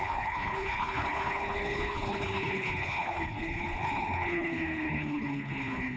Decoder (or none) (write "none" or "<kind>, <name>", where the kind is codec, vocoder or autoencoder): codec, HILCodec